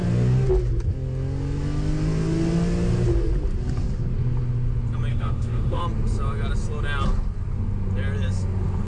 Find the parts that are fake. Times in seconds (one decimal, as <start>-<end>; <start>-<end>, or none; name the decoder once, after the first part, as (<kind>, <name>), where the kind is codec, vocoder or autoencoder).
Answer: 5.1-5.8 (autoencoder, DAC-VAE)